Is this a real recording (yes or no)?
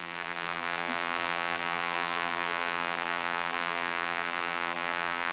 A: no